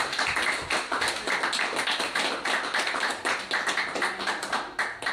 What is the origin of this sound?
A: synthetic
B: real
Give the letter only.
B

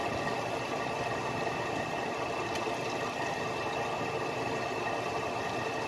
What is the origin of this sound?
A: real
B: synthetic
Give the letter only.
A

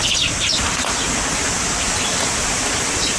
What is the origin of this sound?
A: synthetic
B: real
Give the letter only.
B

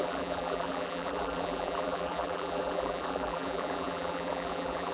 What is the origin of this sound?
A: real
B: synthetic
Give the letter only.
B